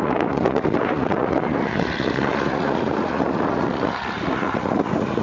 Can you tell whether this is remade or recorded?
remade